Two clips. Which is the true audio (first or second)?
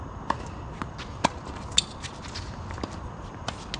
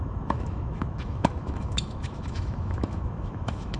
first